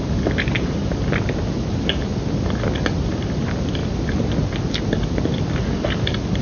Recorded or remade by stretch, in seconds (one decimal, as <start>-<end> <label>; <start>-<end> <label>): 0.0-6.4 recorded